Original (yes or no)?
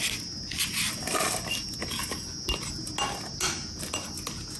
yes